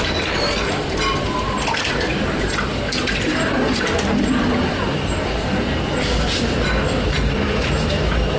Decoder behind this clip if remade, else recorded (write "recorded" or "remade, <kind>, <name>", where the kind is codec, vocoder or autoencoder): recorded